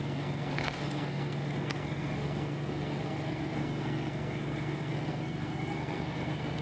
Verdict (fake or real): fake